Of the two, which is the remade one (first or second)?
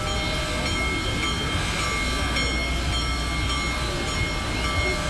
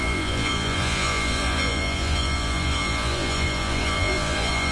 second